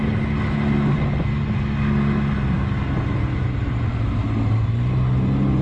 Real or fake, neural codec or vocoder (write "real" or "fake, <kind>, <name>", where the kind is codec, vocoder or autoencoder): real